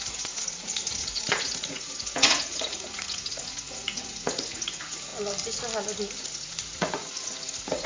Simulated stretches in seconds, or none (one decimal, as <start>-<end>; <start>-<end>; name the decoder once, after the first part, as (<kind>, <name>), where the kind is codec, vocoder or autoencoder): 0.0-5.1 (vocoder, Vocos); 6.2-7.9